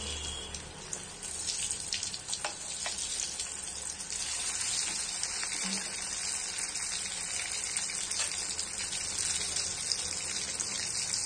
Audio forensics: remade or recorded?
recorded